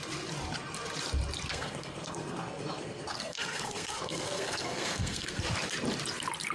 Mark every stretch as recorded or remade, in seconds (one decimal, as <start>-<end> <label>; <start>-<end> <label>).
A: 0.0-1.5 recorded; 1.5-5.4 remade; 5.4-6.5 recorded